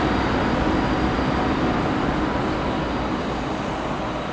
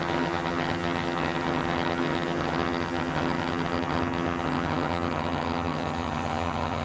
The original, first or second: first